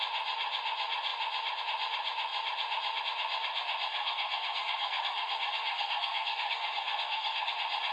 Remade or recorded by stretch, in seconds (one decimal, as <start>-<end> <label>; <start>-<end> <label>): 0.0-3.9 recorded; 3.9-7.5 remade; 7.5-7.9 recorded